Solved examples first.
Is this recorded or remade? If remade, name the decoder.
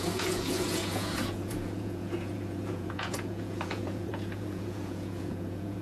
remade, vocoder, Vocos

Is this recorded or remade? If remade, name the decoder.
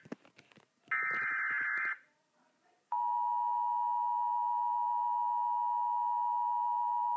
recorded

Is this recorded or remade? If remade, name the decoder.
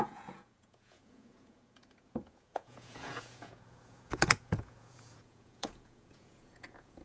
remade, vocoder, Vocos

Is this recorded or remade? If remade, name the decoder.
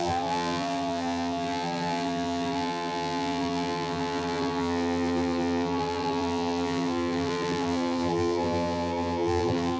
remade, vocoder, BigVGAN v2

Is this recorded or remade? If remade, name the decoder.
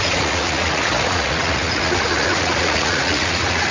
remade, vocoder, Vocos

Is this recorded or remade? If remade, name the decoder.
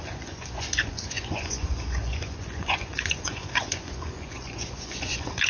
remade, vocoder, Vocos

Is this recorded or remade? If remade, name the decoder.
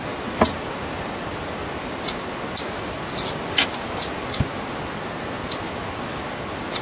recorded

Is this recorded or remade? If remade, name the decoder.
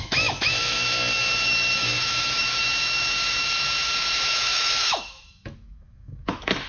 remade, autoencoder, DAC-VAE